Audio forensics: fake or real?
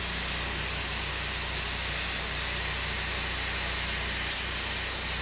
real